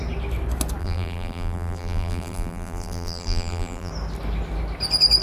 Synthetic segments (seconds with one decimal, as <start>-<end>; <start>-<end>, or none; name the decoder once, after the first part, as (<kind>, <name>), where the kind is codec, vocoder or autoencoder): 0.8-3.9 (vocoder, BigVGAN v2)